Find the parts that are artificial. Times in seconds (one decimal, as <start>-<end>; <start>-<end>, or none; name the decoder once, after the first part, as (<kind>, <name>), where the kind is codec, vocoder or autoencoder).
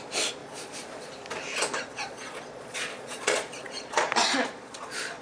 0.4-1.1 (vocoder, Vocos); 1.9-5.2